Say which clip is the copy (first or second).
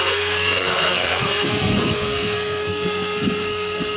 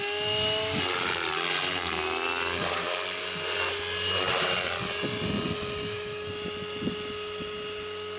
first